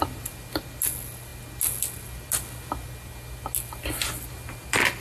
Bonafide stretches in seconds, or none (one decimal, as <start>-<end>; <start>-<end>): 0.0-5.0